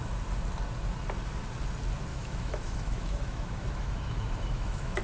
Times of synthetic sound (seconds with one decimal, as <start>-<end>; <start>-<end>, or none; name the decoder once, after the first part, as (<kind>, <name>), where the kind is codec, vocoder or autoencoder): 2.1-5.0 (autoencoder, DAC-VAE)